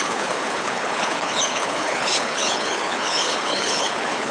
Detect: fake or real fake